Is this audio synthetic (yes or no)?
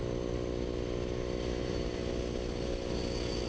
no